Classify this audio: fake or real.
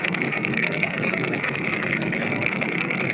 fake